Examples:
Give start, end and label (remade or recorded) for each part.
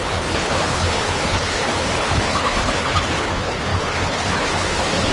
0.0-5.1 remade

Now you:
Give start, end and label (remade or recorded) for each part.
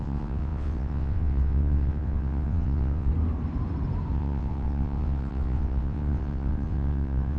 0.0-3.1 remade; 3.1-4.1 recorded; 4.1-7.4 remade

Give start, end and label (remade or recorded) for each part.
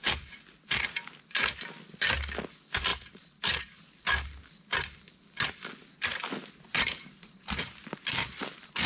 0.0-2.9 recorded; 2.9-3.8 remade; 3.8-6.7 recorded; 6.7-7.6 remade; 7.6-8.9 recorded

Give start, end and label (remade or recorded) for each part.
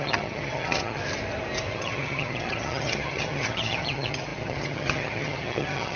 0.0-1.0 remade; 1.0-1.7 recorded; 1.7-6.0 remade